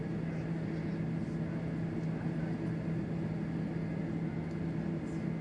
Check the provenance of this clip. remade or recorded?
recorded